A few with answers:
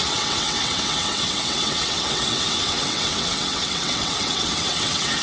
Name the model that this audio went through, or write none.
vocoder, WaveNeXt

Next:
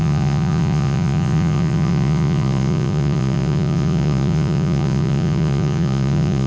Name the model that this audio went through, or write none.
vocoder, Vocos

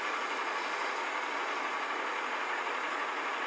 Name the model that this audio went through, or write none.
vocoder, Vocos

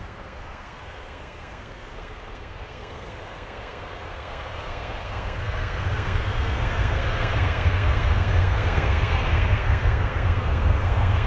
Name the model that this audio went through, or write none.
codec, SNAC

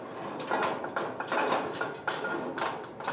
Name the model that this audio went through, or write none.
none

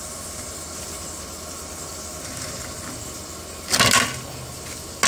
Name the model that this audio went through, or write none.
none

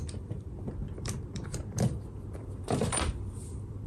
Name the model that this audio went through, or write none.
vocoder, BigVGAN v2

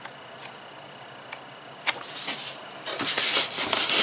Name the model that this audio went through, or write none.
none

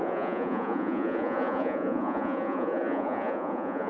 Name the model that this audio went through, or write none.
vocoder, Vocos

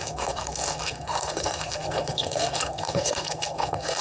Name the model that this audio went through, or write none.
codec, SNAC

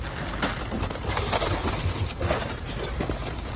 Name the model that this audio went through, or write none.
none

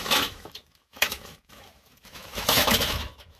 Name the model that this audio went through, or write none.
autoencoder, DAC-VAE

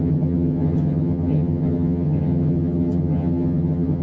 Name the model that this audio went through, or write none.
vocoder, HiFi-GAN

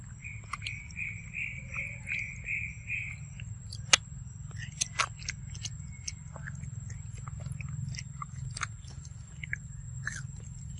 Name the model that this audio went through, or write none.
none